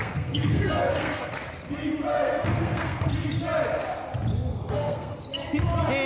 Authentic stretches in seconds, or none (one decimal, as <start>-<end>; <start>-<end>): 1.3-2.1; 3.1-4.5; 5.2-6.1